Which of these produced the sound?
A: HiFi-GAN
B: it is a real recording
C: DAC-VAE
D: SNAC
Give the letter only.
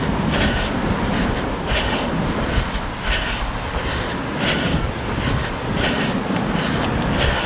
B